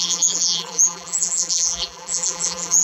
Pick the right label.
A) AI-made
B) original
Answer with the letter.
A